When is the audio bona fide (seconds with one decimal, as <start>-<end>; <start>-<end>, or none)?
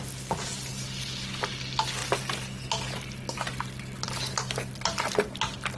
0.0-5.8